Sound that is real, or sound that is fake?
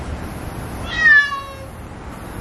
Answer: real